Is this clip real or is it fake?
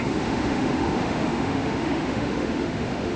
fake